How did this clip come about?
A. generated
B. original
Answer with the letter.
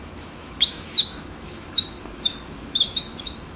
A